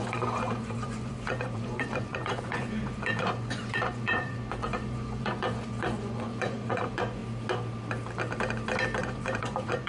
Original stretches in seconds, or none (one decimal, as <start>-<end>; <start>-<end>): 7.2-9.0